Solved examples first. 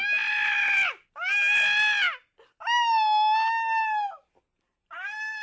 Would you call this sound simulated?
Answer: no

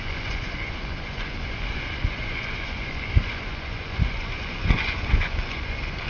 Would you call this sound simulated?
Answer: yes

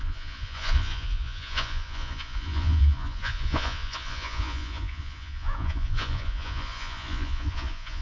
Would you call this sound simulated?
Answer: yes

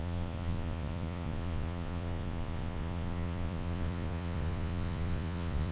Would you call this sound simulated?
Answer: yes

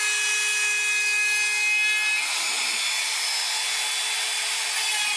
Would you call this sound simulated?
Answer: no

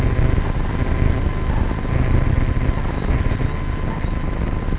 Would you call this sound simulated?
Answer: no